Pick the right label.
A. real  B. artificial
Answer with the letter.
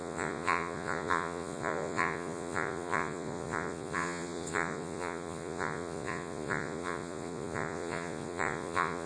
B